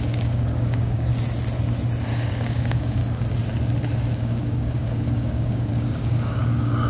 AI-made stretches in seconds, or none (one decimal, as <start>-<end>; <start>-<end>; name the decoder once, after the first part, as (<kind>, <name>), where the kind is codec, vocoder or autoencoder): 0.0-1.1 (codec, DAC); 2.1-3.0; 4.2-6.9